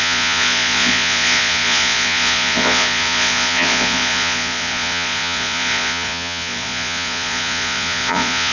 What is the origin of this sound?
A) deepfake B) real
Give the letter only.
A